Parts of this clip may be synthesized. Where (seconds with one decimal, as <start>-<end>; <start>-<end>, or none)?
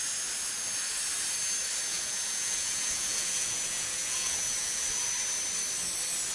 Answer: 1.9-5.1